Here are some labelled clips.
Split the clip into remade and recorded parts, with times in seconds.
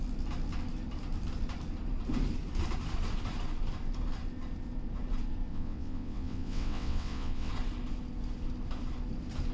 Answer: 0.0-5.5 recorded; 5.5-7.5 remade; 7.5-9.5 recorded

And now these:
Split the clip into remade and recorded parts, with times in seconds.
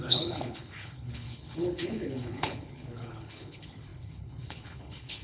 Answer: 0.0-5.2 remade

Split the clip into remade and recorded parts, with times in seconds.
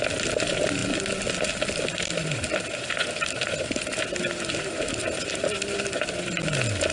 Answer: 0.0-6.9 recorded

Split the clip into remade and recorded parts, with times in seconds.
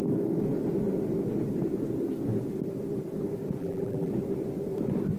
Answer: 0.0-3.6 recorded; 3.6-4.1 remade; 4.1-5.2 recorded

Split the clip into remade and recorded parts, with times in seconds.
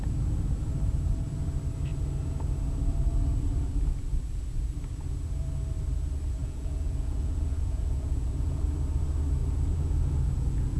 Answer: 0.0-6.4 recorded; 6.4-8.6 remade; 8.6-9.4 recorded; 9.4-10.8 remade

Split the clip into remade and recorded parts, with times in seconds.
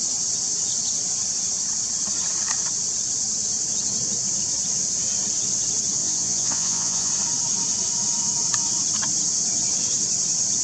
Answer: 0.0-6.0 recorded; 6.0-7.1 remade; 7.1-10.6 recorded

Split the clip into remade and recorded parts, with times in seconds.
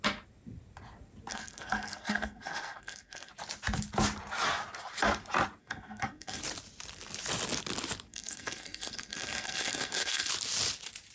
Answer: 0.0-1.3 recorded; 1.3-3.3 remade; 3.3-5.6 recorded; 5.6-6.4 remade; 6.4-8.1 recorded; 8.1-10.3 remade; 10.3-11.1 recorded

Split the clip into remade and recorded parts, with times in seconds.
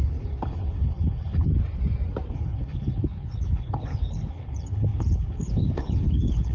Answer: 0.0-1.5 remade; 1.5-2.3 recorded; 2.3-6.5 remade